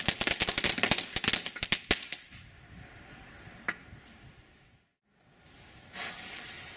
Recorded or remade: recorded